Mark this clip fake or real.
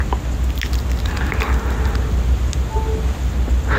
real